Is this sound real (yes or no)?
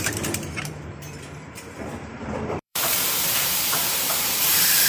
no